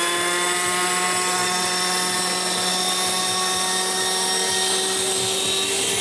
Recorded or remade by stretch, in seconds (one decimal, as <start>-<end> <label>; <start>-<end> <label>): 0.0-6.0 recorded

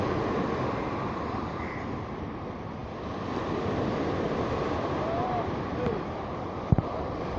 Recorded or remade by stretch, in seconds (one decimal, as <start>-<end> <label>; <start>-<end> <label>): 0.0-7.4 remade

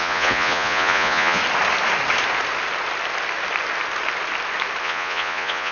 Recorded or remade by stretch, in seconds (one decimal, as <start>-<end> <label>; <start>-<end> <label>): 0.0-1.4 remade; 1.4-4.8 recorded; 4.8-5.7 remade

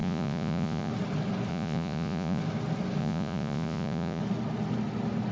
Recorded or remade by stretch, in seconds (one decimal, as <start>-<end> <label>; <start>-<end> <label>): 0.0-0.9 remade; 0.9-1.5 recorded; 1.5-2.4 remade; 2.4-3.0 recorded; 3.0-4.2 remade; 4.2-5.3 recorded

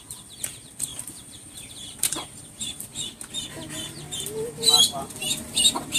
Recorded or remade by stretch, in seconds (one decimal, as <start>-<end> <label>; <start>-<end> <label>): 0.0-2.9 remade; 2.9-4.8 recorded; 4.8-6.0 remade

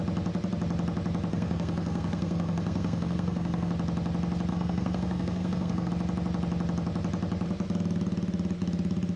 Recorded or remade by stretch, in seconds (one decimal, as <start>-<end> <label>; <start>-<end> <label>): 0.0-1.3 recorded; 1.3-3.7 remade; 3.7-4.5 recorded; 4.5-5.9 remade; 5.9-9.2 recorded

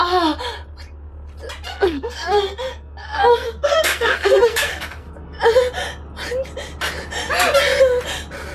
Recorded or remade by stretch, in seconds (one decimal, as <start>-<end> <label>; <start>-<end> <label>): 0.0-1.7 recorded; 1.7-5.4 remade; 5.4-8.5 recorded